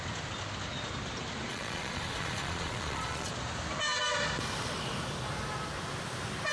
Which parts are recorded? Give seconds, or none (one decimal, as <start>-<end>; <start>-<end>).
0.0-1.5; 3.3-6.5